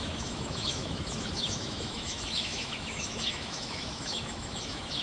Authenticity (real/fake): fake